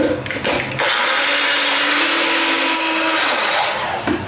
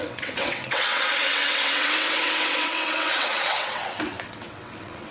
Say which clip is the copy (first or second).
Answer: second